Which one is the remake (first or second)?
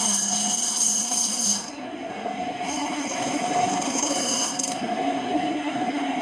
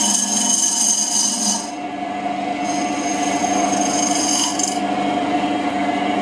first